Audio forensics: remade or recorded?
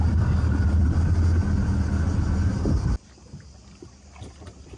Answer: recorded